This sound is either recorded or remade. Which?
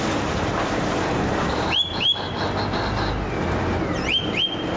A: recorded